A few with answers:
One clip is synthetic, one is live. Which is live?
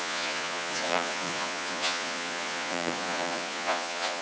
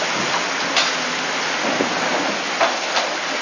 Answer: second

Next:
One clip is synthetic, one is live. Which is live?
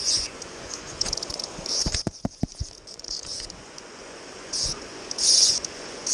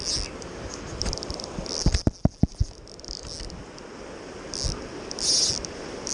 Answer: second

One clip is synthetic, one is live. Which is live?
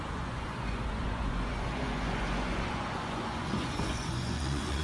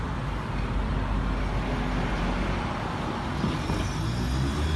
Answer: second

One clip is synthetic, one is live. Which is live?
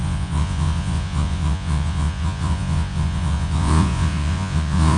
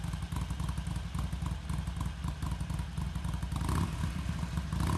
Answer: second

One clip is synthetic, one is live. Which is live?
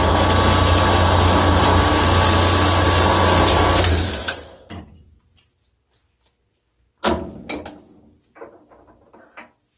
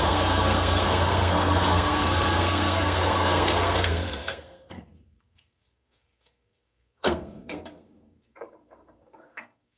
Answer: first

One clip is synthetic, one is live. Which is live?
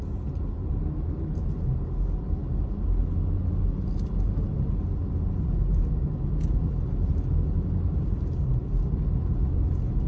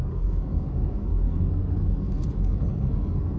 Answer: first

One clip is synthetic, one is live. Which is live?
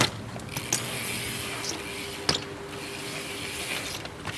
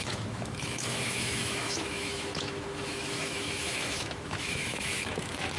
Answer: first